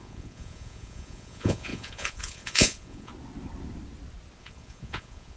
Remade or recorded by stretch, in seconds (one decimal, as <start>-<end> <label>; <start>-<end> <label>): 0.0-3.1 remade; 3.1-4.4 recorded; 4.4-5.4 remade